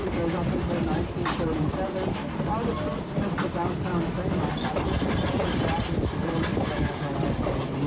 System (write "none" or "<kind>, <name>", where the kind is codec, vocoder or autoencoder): none